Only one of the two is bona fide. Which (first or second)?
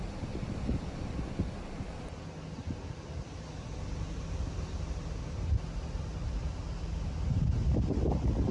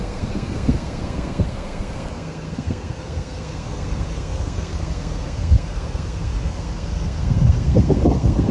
first